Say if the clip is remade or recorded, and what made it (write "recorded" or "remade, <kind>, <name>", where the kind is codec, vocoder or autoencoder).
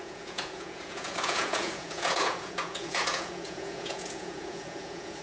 remade, vocoder, Vocos